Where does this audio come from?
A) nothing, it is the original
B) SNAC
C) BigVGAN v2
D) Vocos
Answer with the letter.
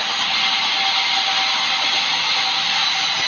A